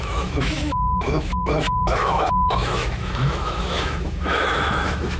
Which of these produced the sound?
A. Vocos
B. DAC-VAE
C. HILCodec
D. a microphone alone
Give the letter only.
B